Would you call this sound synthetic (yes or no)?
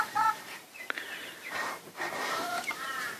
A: yes